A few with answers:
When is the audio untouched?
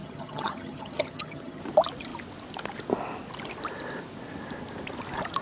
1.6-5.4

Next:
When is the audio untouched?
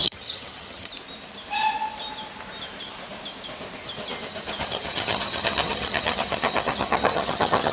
0.9-4.6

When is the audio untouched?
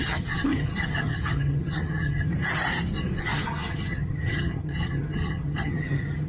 2.3-3.2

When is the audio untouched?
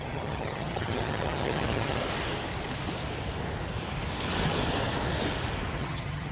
2.0-5.8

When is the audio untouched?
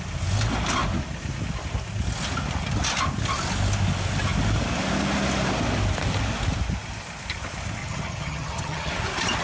0.0-7.8; 8.9-9.4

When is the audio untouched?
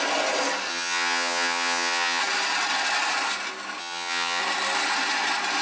0.0-0.7; 2.2-3.8; 4.4-5.6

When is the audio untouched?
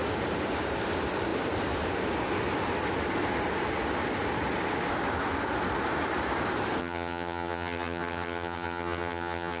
0.0-6.8